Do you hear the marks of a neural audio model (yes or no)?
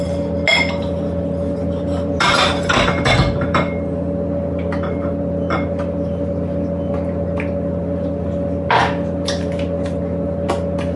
no